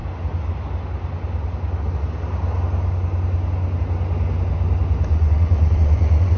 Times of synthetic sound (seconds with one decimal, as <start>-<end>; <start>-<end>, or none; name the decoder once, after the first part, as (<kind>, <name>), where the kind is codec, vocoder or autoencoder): 5.1-6.4 (vocoder, WaveNeXt)